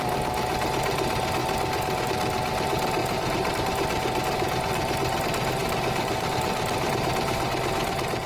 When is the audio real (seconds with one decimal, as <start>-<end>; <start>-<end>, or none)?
0.0-3.0; 3.6-5.6; 6.9-8.3